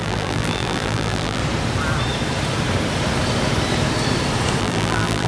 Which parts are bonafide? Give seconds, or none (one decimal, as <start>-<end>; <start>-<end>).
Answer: 1.4-4.6